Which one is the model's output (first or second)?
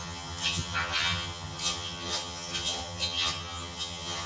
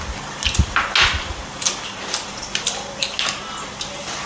first